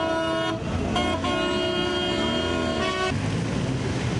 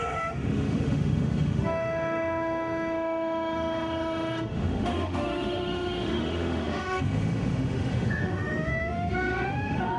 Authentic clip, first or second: first